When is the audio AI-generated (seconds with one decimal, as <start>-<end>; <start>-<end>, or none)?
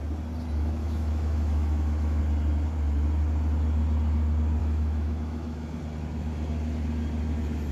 0.8-2.2; 4.6-5.8